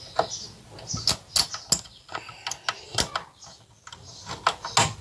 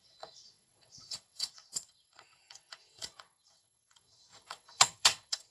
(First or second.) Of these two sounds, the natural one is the first